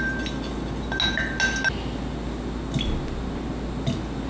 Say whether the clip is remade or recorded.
recorded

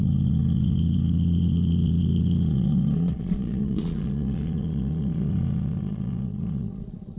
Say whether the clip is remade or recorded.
remade